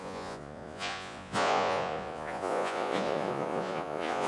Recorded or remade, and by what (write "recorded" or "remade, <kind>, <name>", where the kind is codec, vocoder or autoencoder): remade, vocoder, Vocos